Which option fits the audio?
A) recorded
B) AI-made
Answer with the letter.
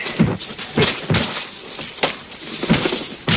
A